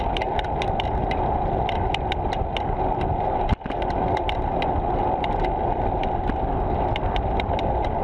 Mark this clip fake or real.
real